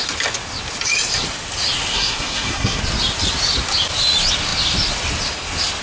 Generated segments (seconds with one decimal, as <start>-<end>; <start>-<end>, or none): 1.9-2.8